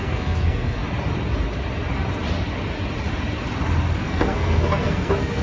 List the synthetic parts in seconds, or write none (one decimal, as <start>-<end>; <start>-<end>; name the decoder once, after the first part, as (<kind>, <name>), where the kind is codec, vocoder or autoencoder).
0.0-0.8 (codec, SNAC); 4.0-5.4